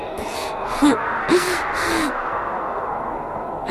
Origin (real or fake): fake